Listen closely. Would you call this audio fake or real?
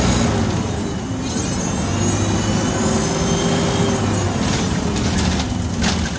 real